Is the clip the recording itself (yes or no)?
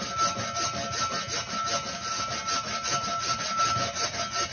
yes